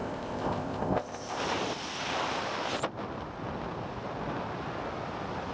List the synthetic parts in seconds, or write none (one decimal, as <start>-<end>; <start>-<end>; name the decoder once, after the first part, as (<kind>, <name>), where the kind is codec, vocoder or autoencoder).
0.0-1.4 (codec, ZipCodec)